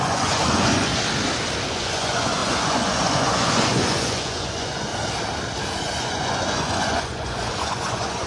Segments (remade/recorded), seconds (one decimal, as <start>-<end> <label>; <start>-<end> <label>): 0.0-0.9 remade; 0.9-1.7 recorded; 1.7-4.9 remade; 4.9-5.8 recorded; 5.8-8.3 remade